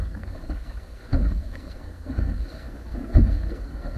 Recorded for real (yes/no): no